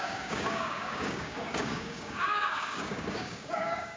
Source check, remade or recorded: remade